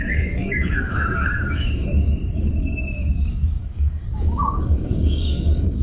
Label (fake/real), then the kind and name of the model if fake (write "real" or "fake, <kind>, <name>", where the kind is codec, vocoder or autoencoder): fake, codec, DAC